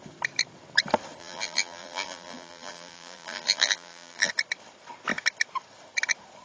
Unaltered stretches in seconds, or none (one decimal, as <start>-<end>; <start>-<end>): 0.0-1.2; 4.3-6.4